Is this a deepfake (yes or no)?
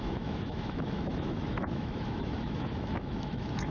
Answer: yes